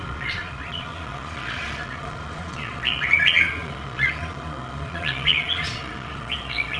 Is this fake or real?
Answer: fake